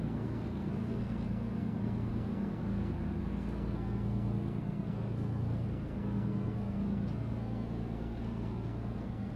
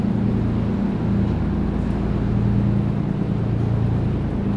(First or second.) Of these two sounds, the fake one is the first